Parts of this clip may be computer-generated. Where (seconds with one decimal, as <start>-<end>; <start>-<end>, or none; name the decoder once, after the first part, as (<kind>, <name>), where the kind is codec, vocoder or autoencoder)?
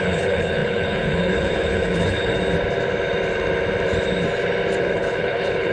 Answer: 0.0-2.4 (codec, HILCodec); 4.8-5.7